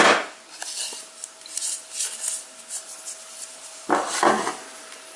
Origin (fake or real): real